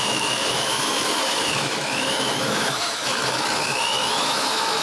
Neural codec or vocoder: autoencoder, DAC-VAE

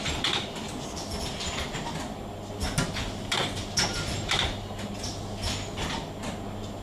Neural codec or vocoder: none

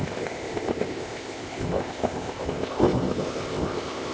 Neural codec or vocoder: codec, ZipCodec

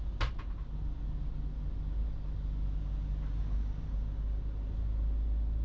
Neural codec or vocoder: none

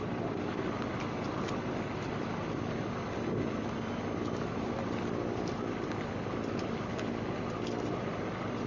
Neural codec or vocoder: none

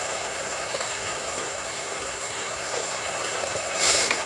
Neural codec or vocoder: codec, SNAC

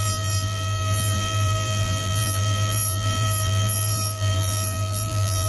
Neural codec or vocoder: vocoder, BigVGAN v2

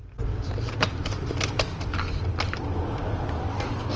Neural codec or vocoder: none